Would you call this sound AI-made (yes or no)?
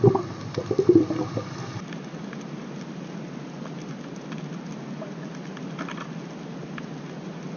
no